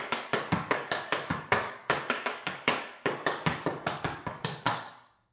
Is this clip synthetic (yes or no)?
yes